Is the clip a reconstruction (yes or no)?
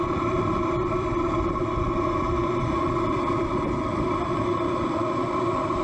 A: yes